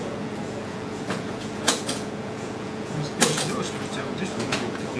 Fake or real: fake